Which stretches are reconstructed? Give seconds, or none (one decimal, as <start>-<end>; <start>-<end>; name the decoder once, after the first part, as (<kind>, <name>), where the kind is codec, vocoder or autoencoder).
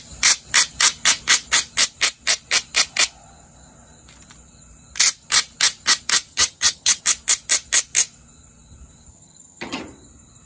6.3-7.0 (vocoder, HiFi-GAN); 9.1-9.8